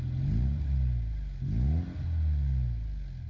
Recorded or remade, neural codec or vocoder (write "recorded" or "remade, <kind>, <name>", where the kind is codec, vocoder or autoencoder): recorded